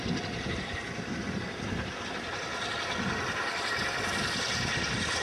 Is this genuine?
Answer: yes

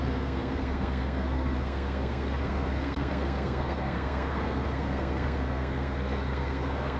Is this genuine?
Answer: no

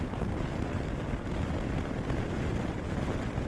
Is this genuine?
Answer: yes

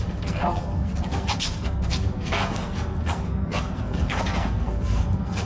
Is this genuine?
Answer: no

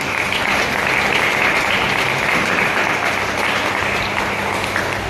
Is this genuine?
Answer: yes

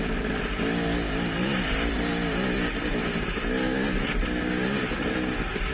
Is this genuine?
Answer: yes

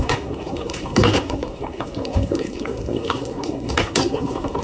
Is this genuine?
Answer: no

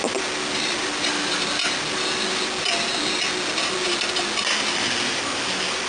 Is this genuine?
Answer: yes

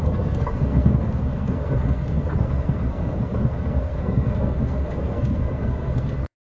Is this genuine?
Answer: no